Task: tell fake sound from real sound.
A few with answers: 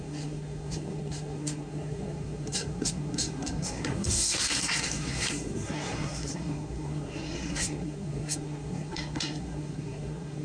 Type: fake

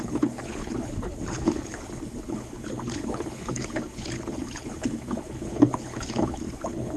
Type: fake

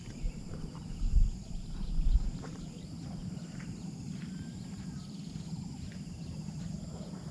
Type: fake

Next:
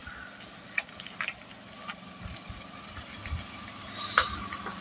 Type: real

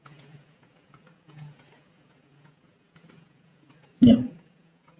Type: fake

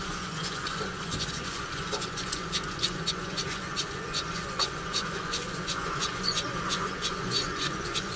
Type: fake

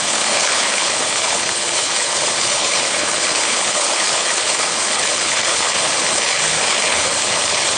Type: fake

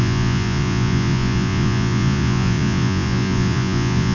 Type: fake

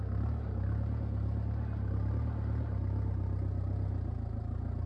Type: real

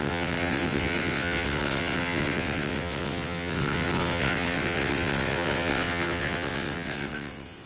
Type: fake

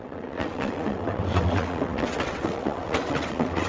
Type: fake